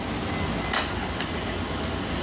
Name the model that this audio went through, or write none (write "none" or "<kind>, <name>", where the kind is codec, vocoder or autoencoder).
none